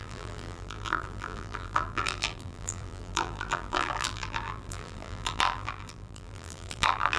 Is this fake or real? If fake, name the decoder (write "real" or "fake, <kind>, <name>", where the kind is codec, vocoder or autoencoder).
fake, vocoder, BigVGAN v2